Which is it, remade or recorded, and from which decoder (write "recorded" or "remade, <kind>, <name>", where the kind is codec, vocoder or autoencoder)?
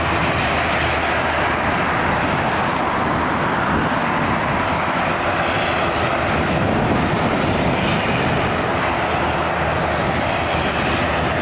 recorded